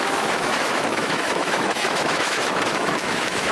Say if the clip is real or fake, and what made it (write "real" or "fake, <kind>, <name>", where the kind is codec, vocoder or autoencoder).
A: fake, autoencoder, DAC-VAE